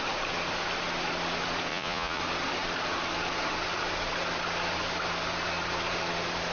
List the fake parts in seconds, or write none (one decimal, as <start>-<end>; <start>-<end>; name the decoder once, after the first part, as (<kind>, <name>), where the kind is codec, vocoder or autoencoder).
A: 1.7-2.2 (vocoder, Vocos)